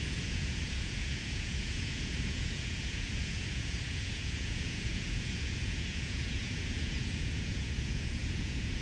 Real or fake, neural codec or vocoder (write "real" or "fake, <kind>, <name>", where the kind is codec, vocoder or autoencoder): fake, vocoder, Vocos